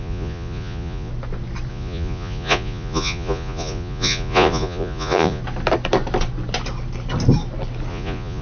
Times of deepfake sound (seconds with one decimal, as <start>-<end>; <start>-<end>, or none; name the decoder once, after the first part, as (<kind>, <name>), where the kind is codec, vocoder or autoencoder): 0.0-1.1 (vocoder, Vocos); 1.7-5.4; 7.9-8.4